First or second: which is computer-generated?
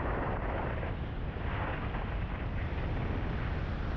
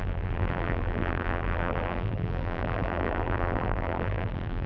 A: second